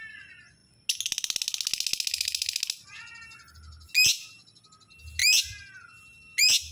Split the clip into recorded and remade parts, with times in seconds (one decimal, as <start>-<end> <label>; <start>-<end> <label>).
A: 0.0-6.7 recorded